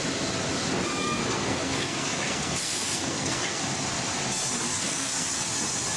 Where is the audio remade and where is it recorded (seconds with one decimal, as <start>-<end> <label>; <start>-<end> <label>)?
0.0-1.0 recorded; 1.0-3.6 remade; 3.6-4.7 recorded; 4.7-5.5 remade; 5.5-6.0 recorded